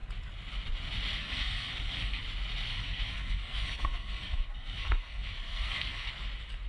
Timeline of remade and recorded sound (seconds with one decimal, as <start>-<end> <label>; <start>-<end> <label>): 0.0-1.2 recorded; 1.2-2.2 remade; 2.2-2.7 recorded; 2.7-6.1 remade; 6.1-6.7 recorded